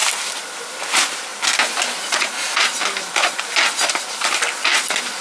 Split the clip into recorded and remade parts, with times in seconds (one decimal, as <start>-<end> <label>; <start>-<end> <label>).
0.0-5.2 recorded